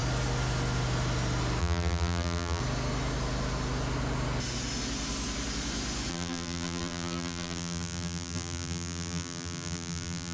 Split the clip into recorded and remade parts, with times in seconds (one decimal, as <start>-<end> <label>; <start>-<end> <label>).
0.0-1.6 recorded; 1.6-2.6 remade; 2.6-6.1 recorded; 6.1-10.3 remade